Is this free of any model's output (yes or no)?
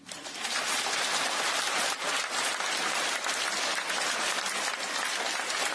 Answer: yes